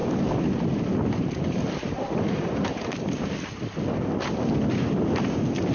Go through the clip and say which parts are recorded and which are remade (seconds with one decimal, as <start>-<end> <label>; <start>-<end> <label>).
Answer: 0.0-5.7 recorded